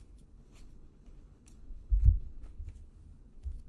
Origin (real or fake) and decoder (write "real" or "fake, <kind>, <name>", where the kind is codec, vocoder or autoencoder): fake, codec, HILCodec